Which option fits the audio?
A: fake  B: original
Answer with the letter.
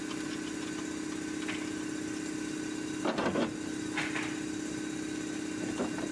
B